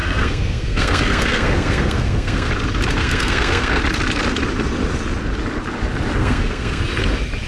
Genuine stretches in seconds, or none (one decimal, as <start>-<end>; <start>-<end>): 2.5-3.0; 3.8-6.2; 6.8-7.5